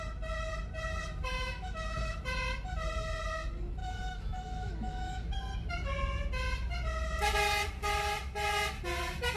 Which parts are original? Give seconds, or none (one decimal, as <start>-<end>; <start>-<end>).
0.0-1.3; 2.2-3.8; 5.3-9.4